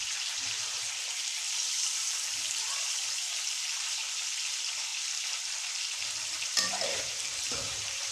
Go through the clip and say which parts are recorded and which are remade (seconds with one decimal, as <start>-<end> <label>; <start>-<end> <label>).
0.0-4.9 remade; 4.9-6.7 recorded; 6.7-8.1 remade